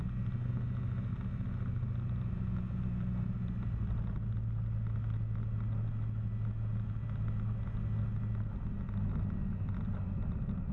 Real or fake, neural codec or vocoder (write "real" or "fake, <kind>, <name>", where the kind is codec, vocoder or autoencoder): real